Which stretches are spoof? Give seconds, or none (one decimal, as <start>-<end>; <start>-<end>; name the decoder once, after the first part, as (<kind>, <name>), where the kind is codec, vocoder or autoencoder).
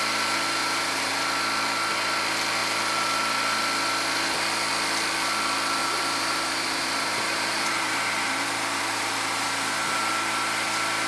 0.6-1.1 (vocoder, BigVGAN v2); 5.8-10.1